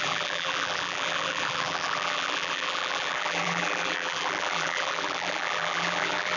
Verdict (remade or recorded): remade